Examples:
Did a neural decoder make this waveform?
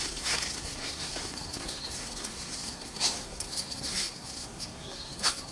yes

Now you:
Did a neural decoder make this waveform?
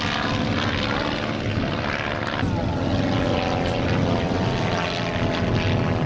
no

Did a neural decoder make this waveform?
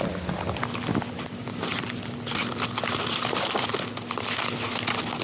no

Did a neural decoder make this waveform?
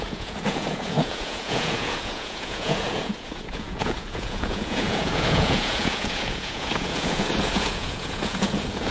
yes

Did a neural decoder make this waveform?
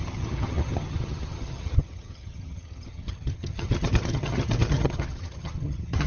yes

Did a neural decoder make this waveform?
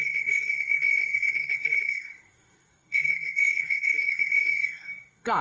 yes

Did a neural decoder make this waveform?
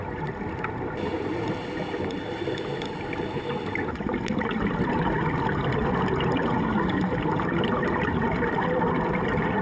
no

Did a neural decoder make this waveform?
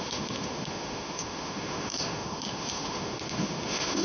yes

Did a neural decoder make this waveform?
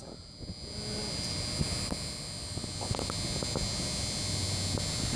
no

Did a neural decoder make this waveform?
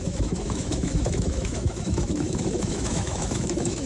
yes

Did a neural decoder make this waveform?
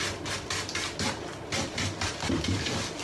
no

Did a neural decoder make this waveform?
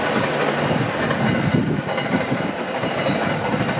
no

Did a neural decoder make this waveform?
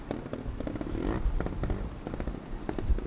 no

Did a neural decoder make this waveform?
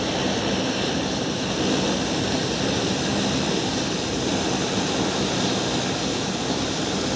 no